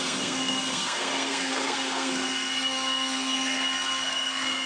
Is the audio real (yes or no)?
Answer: no